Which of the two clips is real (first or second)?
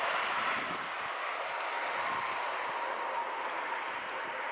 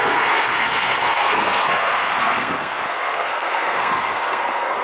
first